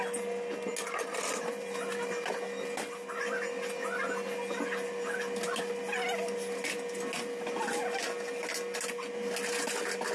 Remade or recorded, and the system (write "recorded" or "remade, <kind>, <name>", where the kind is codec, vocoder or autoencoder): recorded